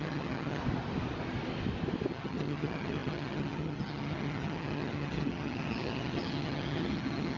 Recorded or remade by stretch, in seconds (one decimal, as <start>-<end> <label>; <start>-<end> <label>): 0.0-0.6 remade; 0.6-2.1 recorded; 2.1-7.4 remade